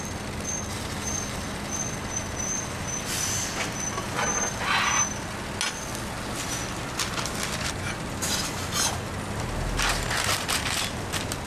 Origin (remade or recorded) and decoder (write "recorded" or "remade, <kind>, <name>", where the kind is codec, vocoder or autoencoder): recorded